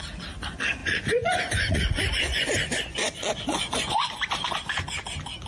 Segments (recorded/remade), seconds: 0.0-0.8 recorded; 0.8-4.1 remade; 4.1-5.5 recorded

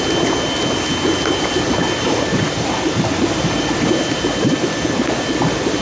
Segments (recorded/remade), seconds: 0.0-2.3 recorded; 2.3-5.2 remade; 5.2-5.8 recorded

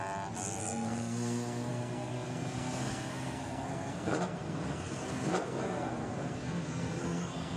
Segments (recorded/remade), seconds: 0.0-0.6 recorded; 0.6-7.6 remade

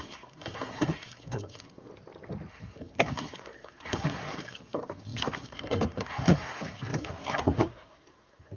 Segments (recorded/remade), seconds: 0.0-1.9 remade; 1.9-2.5 recorded; 2.5-8.6 remade

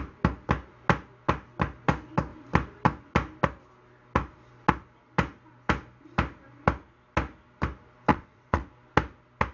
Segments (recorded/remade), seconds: 0.0-8.1 recorded; 8.1-8.7 remade; 8.7-9.5 recorded

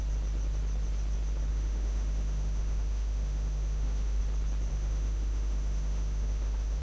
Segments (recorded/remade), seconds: 0.0-1.5 recorded; 1.5-4.2 remade; 4.2-4.7 recorded; 4.7-6.8 remade

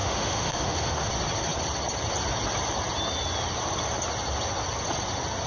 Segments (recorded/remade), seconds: 0.0-1.1 remade; 1.1-5.5 recorded

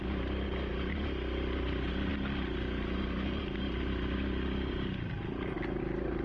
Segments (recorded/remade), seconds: 0.0-6.2 recorded